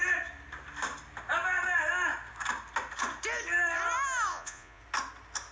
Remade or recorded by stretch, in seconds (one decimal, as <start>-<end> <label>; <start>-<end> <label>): 0.0-4.3 recorded; 4.3-4.8 remade; 4.8-5.5 recorded